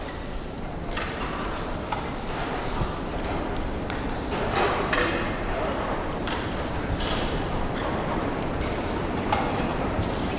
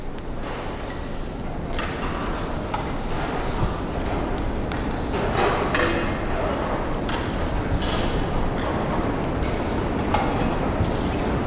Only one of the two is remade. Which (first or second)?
first